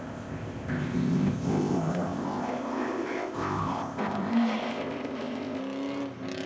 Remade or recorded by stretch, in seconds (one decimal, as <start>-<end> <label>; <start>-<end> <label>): 0.0-5.6 remade; 5.6-6.5 recorded